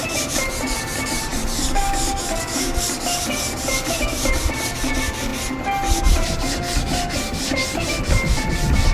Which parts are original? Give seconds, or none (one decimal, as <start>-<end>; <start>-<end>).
5.3-6.0